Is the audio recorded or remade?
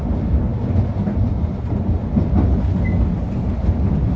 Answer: recorded